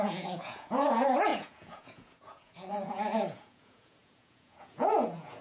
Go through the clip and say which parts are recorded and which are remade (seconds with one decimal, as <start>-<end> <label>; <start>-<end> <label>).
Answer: 0.0-5.4 remade